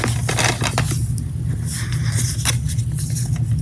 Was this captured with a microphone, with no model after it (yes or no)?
yes